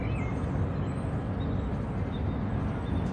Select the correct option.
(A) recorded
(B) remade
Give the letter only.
A